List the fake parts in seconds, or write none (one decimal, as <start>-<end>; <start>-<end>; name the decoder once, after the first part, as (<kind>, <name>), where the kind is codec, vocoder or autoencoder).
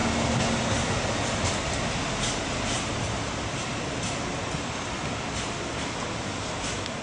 none